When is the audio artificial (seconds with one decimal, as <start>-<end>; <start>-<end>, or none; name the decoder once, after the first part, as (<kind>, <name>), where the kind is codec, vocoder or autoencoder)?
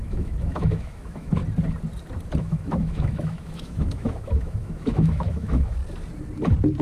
0.0-1.4 (autoencoder, DAC-VAE); 2.4-5.8